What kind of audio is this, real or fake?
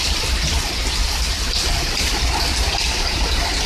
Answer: real